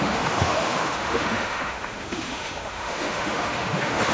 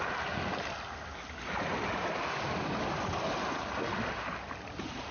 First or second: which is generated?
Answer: first